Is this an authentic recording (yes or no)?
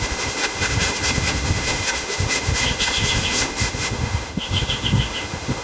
no